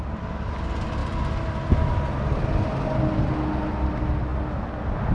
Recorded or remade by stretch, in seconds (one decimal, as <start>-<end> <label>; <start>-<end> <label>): 0.0-5.1 recorded